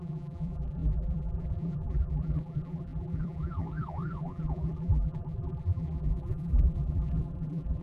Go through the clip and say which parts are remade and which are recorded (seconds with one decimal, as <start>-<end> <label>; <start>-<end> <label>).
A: 0.0-7.8 remade